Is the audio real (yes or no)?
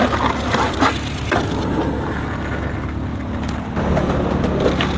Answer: yes